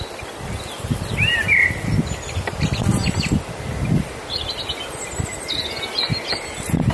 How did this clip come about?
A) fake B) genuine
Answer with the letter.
B